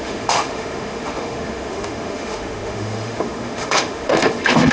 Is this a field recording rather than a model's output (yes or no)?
no